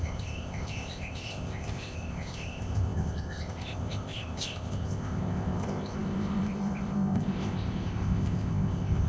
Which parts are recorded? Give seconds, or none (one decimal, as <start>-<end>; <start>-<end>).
none